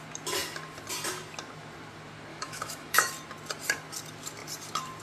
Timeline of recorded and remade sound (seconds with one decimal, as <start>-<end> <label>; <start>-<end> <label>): 0.0-2.3 recorded; 2.3-3.1 remade; 3.1-5.0 recorded